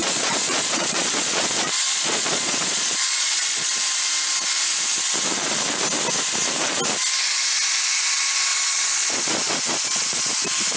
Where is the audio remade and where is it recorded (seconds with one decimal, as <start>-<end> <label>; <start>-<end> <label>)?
0.0-3.7 remade; 3.7-8.5 recorded; 8.5-10.3 remade; 10.3-10.8 recorded